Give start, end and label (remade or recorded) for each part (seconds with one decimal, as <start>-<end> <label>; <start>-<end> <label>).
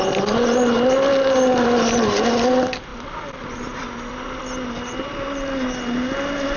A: 0.0-2.9 recorded; 2.9-4.4 remade; 4.4-6.6 recorded